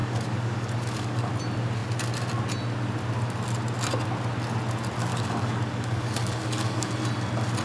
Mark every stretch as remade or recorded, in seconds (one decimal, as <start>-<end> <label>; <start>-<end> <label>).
0.0-1.3 remade; 1.3-5.1 recorded; 5.1-6.9 remade; 6.9-7.6 recorded